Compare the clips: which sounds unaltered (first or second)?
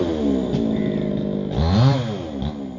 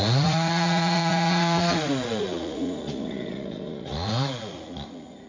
first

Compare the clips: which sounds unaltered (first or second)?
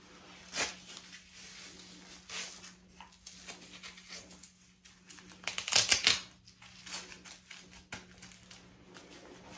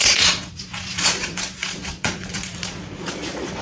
first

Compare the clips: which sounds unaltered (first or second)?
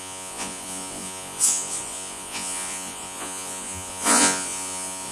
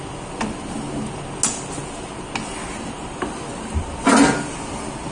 second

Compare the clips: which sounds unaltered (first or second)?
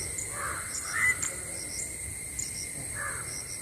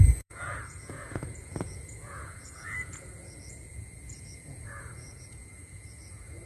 first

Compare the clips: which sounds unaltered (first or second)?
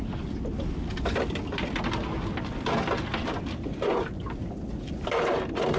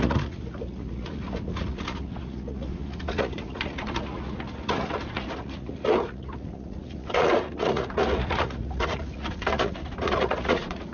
first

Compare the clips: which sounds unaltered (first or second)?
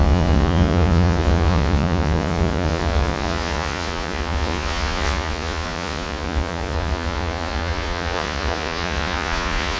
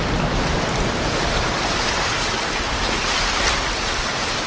second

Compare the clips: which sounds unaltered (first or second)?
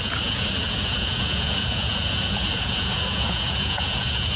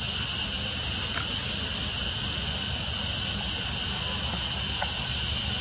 second